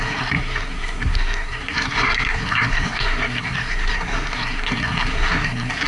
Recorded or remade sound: remade